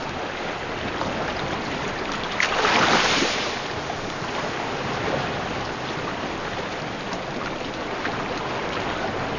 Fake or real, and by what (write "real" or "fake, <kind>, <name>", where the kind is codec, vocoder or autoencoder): real